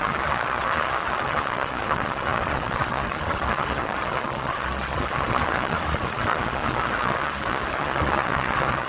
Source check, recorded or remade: remade